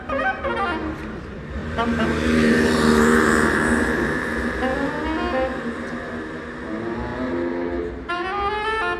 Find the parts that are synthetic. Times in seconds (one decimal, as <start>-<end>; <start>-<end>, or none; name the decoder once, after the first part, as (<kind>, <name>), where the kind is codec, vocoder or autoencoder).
1.6-4.9 (vocoder, BigVGAN v2)